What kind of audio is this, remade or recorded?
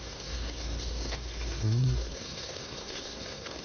remade